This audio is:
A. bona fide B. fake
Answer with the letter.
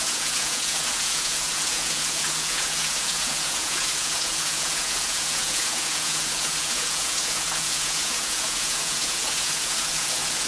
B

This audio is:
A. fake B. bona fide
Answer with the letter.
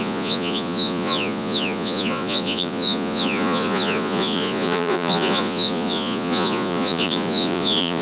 A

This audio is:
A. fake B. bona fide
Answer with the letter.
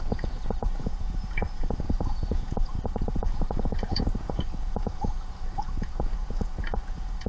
A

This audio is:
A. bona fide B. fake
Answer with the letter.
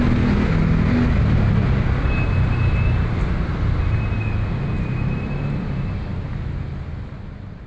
A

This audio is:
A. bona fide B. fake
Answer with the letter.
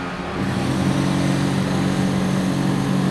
A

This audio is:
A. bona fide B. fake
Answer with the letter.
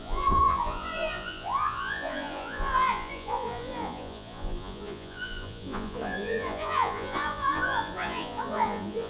B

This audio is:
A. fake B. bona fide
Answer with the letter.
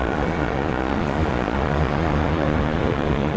A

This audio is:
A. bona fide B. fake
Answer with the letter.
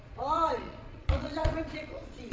B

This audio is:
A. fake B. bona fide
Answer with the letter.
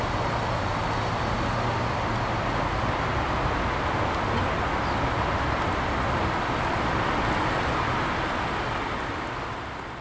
B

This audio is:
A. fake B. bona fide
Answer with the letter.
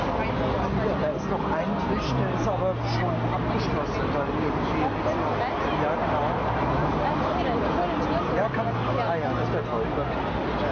B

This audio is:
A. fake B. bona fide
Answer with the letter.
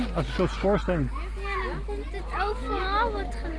B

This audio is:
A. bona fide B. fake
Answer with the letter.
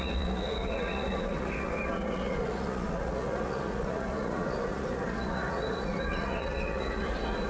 B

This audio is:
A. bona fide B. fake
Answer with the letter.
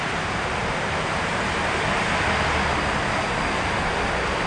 A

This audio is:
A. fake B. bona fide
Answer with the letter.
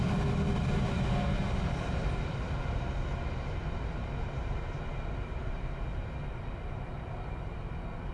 B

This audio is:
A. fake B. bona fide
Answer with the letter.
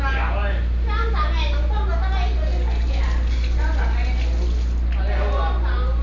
B